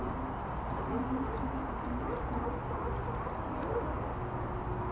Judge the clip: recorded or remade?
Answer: recorded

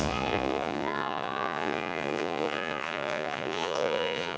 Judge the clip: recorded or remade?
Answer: remade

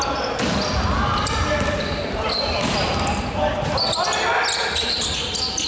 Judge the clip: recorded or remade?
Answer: recorded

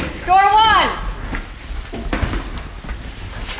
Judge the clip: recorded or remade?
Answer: recorded